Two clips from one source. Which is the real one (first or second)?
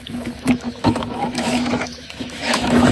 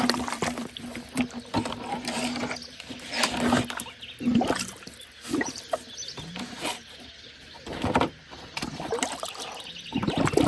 second